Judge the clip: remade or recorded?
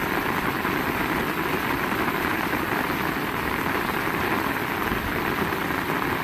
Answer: recorded